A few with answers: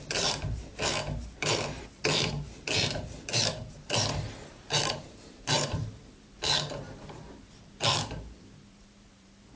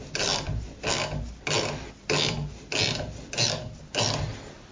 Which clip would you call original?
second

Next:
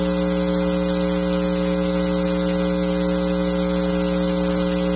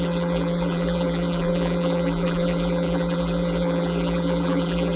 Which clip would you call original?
first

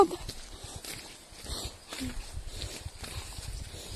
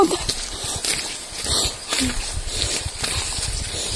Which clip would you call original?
first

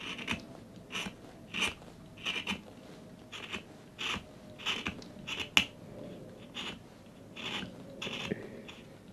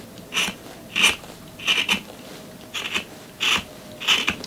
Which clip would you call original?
first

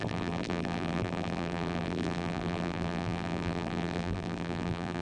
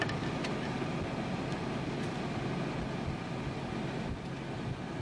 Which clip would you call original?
second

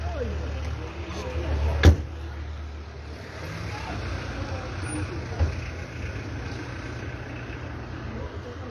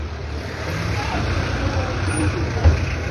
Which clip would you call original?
first